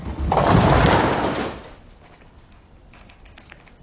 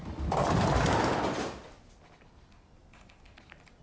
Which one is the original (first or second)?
second